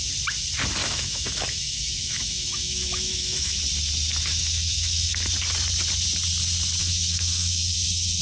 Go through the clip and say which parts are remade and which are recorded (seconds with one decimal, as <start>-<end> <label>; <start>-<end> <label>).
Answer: 0.0-0.8 recorded; 0.8-3.6 remade; 3.6-4.3 recorded; 4.3-5.3 remade; 5.3-6.8 recorded; 6.8-8.2 remade